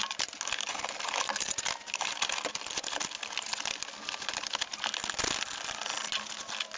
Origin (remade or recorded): recorded